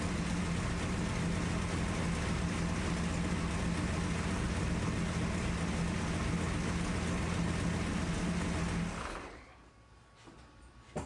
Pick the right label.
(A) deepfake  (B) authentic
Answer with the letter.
B